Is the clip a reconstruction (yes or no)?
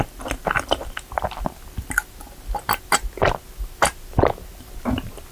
no